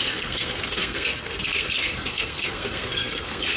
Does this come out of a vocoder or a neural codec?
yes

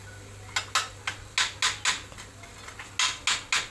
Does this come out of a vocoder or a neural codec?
no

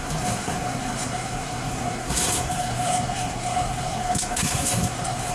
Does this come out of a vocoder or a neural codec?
yes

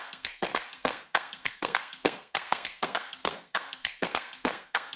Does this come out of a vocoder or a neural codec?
yes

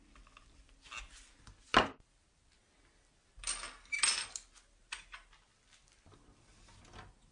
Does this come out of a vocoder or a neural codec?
no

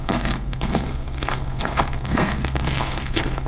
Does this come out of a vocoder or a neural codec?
yes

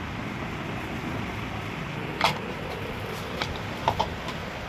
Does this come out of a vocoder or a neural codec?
no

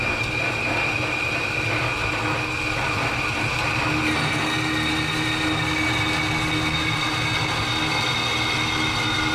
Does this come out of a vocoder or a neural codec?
no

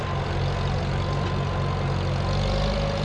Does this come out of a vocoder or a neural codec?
no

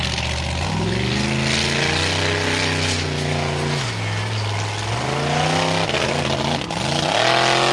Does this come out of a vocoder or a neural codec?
no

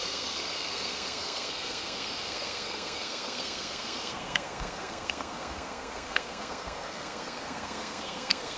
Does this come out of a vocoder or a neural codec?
yes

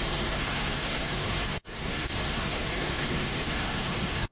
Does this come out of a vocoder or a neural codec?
yes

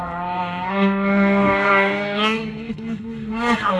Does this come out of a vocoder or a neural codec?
yes